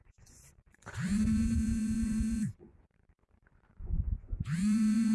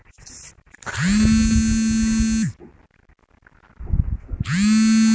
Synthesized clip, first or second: first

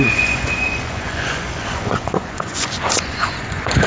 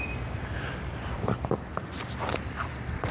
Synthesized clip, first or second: first